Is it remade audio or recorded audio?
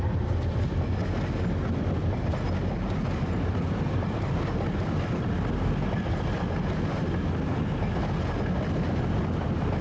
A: recorded